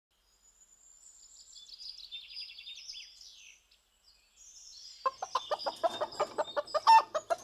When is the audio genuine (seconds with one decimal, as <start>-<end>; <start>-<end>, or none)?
0.0-7.4